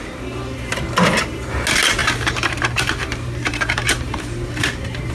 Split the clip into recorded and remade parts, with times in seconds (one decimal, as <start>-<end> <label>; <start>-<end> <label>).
0.0-2.0 recorded; 2.0-5.1 remade